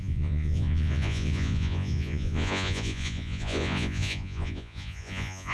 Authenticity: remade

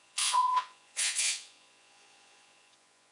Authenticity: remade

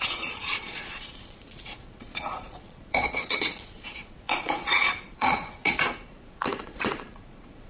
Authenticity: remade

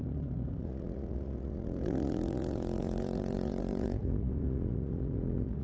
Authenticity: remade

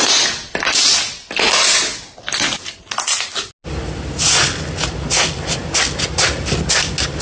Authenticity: recorded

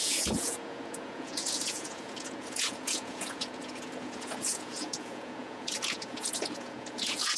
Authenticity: remade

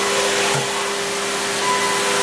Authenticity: recorded